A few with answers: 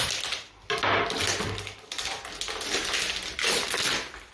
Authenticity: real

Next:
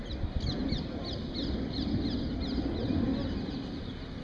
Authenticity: real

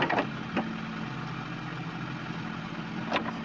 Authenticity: real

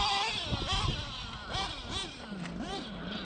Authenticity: real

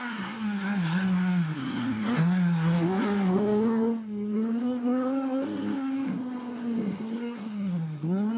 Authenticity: fake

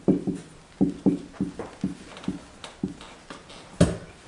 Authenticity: real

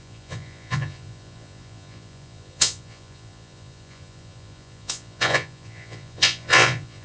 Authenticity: fake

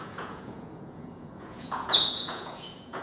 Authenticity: fake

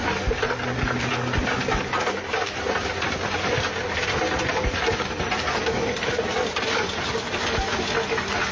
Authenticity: real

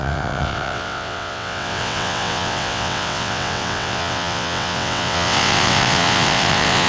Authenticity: fake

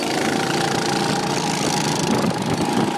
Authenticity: real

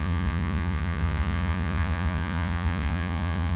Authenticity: fake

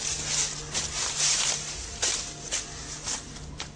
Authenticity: real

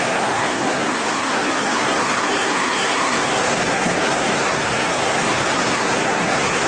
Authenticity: fake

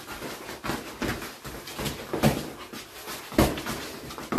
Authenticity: real